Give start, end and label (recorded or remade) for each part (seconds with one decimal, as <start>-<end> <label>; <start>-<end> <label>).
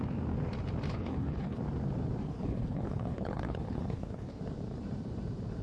0.0-0.9 recorded; 0.9-1.6 remade; 1.6-2.2 recorded; 2.2-4.4 remade; 4.4-5.6 recorded